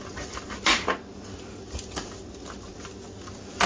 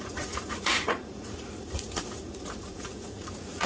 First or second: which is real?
first